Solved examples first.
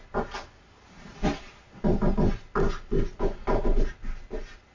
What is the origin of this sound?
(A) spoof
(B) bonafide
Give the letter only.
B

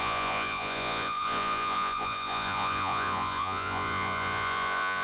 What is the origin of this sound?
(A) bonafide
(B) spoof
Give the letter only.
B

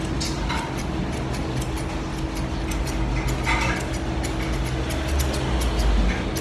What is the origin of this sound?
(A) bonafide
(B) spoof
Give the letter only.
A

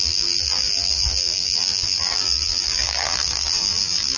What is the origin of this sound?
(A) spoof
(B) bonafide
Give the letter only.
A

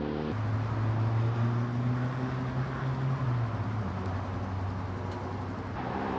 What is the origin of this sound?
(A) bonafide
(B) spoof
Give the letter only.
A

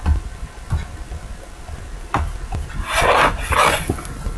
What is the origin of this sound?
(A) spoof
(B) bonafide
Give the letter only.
B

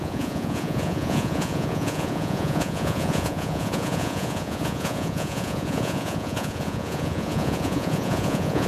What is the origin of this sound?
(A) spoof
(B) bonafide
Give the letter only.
A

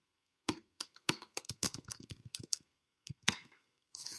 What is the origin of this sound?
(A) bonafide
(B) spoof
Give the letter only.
B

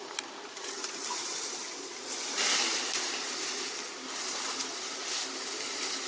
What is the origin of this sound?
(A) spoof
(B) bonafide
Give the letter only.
B